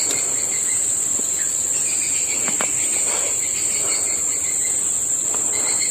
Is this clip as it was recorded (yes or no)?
yes